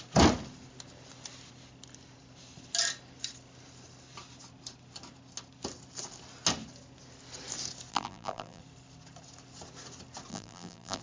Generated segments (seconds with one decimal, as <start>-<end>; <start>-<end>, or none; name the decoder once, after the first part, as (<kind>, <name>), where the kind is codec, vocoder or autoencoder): 7.9-8.6 (vocoder, BigVGAN v2); 10.3-11.0